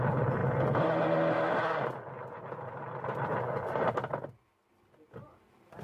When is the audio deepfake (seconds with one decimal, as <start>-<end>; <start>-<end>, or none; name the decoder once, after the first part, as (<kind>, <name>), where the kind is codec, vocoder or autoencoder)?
none